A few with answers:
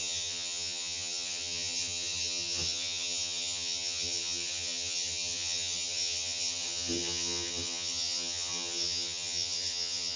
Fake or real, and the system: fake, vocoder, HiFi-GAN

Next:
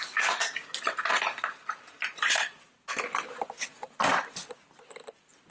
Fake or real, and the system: real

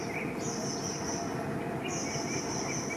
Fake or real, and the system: real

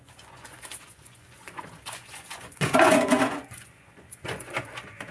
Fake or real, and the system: fake, vocoder, Vocos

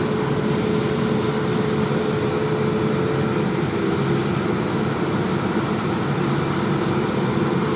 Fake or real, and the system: real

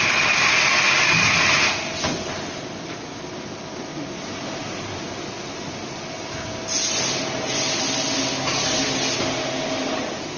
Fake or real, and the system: real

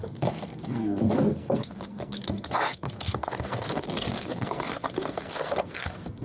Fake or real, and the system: fake, codec, SNAC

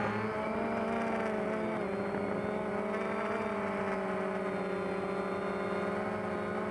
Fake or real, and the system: real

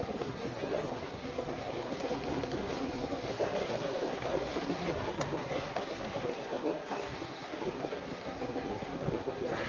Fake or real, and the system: fake, codec, SNAC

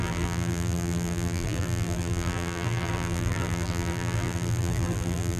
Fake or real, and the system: fake, vocoder, BigVGAN v2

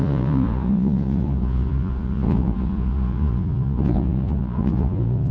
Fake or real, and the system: fake, vocoder, Vocos